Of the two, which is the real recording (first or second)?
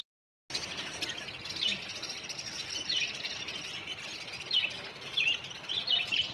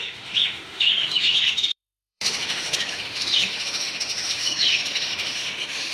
first